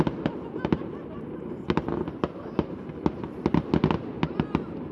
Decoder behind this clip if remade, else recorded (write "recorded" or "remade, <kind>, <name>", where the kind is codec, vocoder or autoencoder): recorded